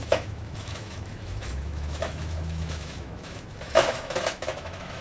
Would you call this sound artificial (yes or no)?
yes